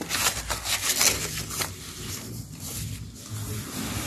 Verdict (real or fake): real